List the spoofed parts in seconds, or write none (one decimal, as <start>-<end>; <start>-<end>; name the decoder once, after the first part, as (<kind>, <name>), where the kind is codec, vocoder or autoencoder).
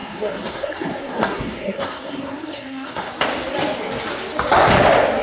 0.0-3.1 (codec, SNAC)